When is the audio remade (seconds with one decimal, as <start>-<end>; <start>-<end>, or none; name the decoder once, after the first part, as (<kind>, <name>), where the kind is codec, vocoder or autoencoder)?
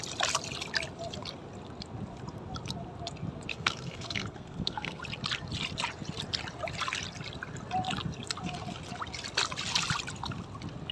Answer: 3.5-5.0 (codec, SNAC)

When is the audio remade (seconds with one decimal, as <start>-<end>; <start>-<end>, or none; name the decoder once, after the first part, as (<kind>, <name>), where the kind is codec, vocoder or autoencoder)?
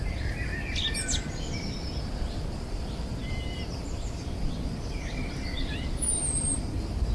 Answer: 0.0-0.5 (vocoder, BigVGAN v2); 2.0-7.1